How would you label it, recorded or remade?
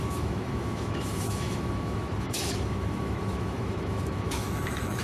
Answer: remade